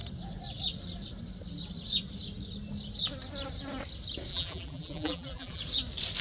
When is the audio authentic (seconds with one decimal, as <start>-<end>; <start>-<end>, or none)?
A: 0.0-4.3; 5.6-6.2